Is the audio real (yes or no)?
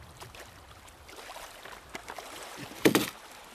yes